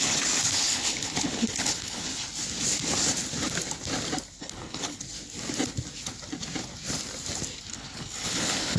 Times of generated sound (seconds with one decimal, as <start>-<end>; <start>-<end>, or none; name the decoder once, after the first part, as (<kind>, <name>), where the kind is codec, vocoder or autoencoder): 0.0-2.1 (codec, HILCodec); 4.4-5.0; 7.7-8.8